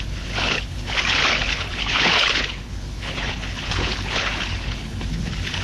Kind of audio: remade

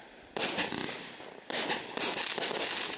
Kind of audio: recorded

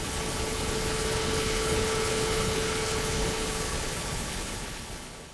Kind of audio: remade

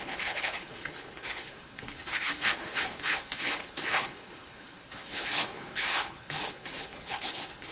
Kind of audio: remade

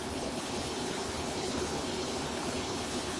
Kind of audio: remade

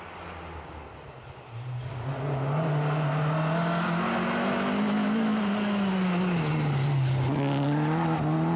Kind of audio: recorded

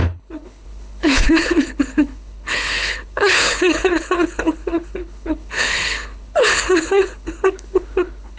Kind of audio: remade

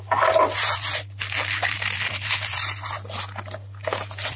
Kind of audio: recorded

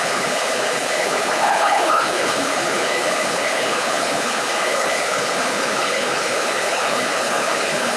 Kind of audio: remade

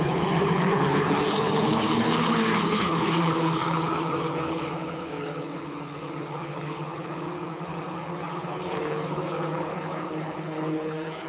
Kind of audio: remade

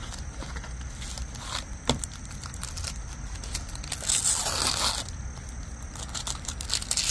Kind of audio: recorded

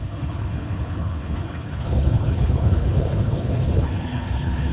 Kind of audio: remade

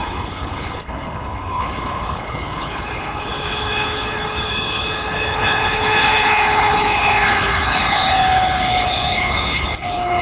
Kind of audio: remade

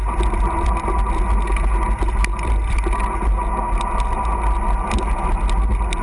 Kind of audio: recorded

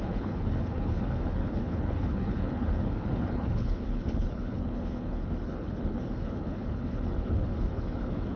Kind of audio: remade